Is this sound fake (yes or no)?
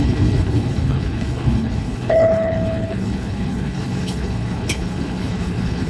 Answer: yes